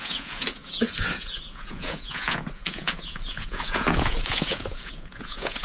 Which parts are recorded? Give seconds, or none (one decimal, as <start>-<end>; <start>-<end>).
none